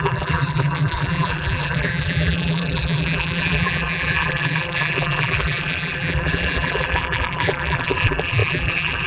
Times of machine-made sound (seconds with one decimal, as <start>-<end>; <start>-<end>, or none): 0.0-9.1